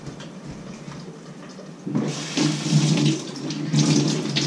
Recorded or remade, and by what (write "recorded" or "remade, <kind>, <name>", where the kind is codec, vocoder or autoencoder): recorded